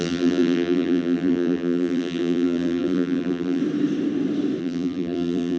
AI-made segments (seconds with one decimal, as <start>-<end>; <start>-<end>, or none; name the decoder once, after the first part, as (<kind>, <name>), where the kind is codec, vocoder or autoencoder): 0.0-3.6 (vocoder, BigVGAN v2); 4.6-5.6